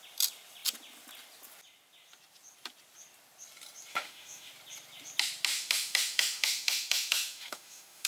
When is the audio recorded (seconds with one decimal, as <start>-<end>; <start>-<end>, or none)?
0.0-3.9; 4.5-5.5